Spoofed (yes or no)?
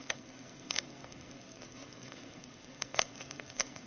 yes